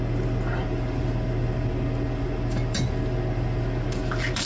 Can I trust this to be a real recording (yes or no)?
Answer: yes